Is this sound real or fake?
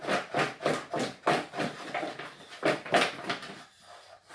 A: real